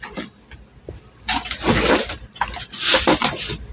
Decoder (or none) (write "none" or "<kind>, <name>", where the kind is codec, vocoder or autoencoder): none